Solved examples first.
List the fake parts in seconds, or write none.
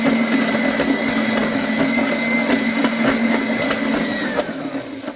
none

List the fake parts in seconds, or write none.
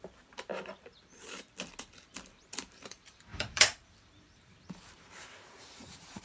0.0-0.5; 2.7-6.2